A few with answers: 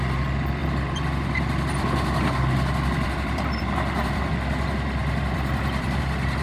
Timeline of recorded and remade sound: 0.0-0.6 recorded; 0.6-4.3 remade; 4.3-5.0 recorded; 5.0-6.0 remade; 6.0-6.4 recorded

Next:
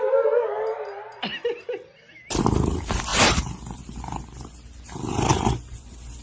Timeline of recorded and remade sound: 0.0-3.1 recorded; 3.1-5.8 remade; 5.8-6.2 recorded